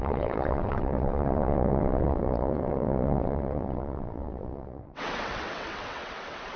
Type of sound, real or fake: fake